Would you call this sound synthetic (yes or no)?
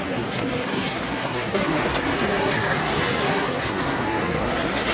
yes